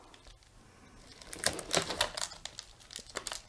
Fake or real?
real